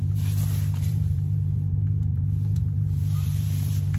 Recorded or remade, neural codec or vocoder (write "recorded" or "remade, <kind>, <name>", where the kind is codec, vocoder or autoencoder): remade, vocoder, BigVGAN v2